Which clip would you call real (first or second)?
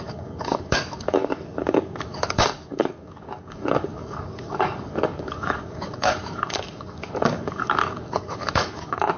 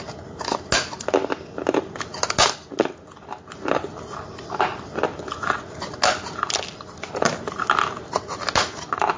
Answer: second